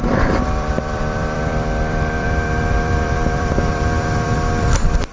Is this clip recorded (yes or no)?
no